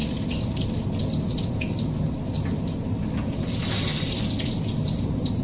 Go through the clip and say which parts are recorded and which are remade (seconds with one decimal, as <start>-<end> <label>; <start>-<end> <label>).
0.0-5.4 recorded